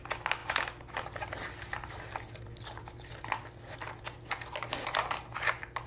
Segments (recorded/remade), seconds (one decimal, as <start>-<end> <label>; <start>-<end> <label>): 0.0-5.9 recorded